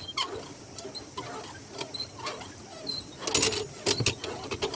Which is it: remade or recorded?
recorded